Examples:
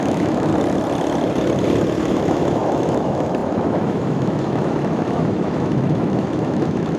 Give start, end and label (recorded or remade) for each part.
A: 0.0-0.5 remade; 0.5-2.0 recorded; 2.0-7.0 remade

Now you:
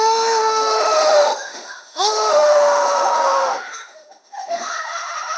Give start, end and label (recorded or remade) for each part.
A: 0.0-5.4 remade